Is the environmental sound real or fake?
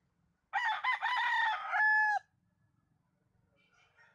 real